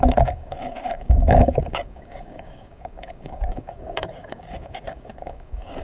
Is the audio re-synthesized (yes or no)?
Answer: yes